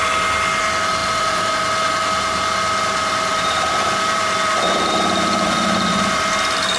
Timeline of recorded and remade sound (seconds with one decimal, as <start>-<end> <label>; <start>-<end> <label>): 0.0-1.0 recorded; 1.0-1.5 remade; 1.5-3.3 recorded; 3.3-6.3 remade; 6.3-6.8 recorded